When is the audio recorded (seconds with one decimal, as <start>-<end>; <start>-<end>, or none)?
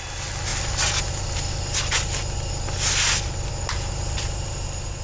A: 0.0-5.0